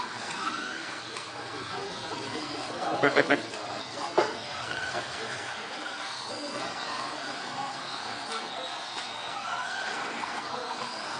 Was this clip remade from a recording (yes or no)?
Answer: yes